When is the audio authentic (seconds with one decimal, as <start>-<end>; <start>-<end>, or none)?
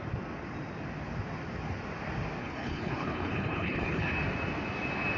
0.0-2.4; 4.1-5.2